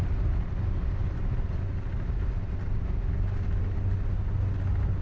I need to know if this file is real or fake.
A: real